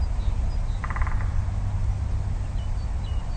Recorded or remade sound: recorded